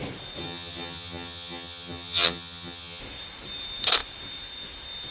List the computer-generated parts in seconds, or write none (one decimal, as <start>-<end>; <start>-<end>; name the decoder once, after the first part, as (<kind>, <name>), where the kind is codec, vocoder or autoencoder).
0.4-3.0 (vocoder, HiFi-GAN)